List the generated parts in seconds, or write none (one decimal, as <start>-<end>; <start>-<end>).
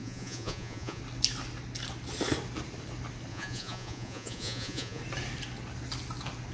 0.0-1.0; 3.3-5.0